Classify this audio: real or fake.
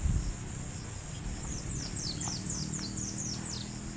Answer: real